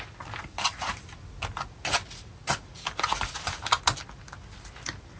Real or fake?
real